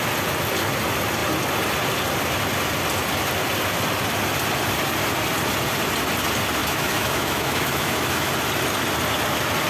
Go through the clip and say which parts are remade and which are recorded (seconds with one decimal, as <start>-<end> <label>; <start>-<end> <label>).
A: 0.0-6.6 recorded; 6.6-8.3 remade; 8.3-9.7 recorded